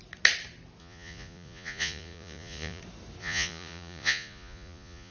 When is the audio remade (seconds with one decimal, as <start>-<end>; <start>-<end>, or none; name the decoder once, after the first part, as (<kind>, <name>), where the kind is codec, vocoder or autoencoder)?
0.8-2.8 (vocoder, Vocos); 3.2-5.1